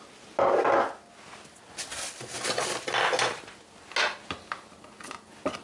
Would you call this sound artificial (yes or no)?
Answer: no